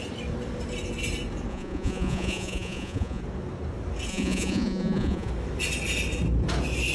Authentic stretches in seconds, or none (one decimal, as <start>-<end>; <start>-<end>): 0.0-1.5; 3.2-4.1; 5.3-6.9